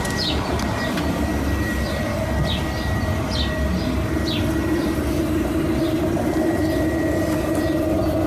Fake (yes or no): no